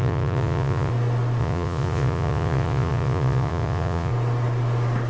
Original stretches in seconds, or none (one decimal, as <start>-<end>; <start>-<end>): 0.9-1.4; 4.1-5.1